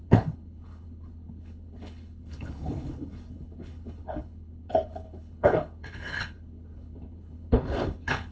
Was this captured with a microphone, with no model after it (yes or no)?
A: no